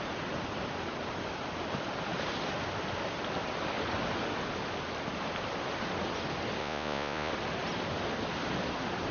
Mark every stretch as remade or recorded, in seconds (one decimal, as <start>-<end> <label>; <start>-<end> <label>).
0.0-6.6 recorded; 6.6-7.3 remade; 7.3-9.1 recorded